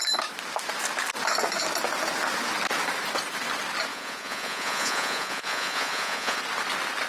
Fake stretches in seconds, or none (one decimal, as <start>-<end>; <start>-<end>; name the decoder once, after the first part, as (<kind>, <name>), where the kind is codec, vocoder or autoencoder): 3.9-6.4 (vocoder, Vocos)